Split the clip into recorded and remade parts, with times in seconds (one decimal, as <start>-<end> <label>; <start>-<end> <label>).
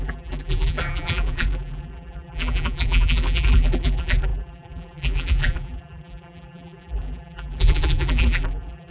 0.0-8.9 remade